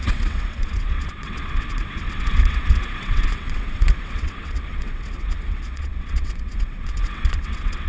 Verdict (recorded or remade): remade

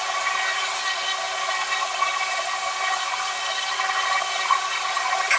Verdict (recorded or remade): recorded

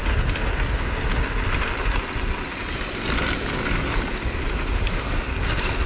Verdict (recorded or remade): recorded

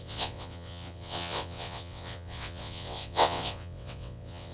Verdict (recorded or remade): remade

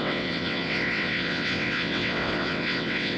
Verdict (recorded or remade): remade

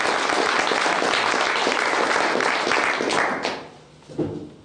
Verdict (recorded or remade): recorded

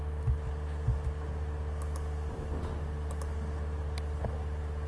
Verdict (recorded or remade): recorded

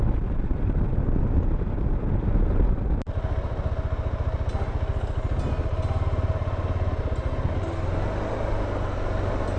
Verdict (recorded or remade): recorded